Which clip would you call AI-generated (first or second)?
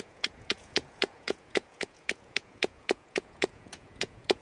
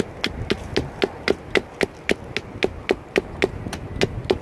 first